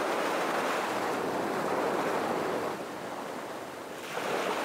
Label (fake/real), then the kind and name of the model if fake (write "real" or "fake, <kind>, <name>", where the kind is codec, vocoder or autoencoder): real